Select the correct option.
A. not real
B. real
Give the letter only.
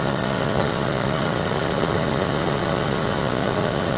A